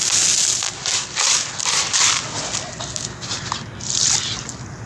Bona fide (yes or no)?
yes